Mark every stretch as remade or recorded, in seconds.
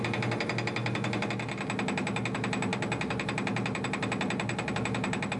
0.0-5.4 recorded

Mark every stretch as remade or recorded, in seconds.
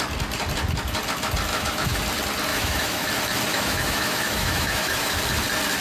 0.0-1.5 recorded; 1.5-2.0 remade; 2.0-2.5 recorded; 2.5-3.1 remade; 3.1-3.5 recorded; 3.5-5.2 remade; 5.2-5.8 recorded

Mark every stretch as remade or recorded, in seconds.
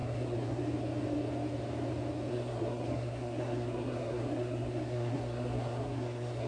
0.0-0.6 remade; 0.6-2.3 recorded; 2.3-6.5 remade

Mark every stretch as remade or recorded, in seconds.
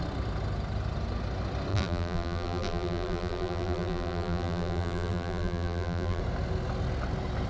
0.0-1.7 recorded; 1.7-6.2 remade; 6.2-7.5 recorded